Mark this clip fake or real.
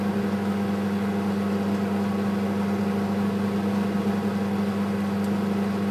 real